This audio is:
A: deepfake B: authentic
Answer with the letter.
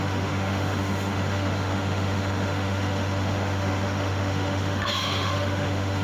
A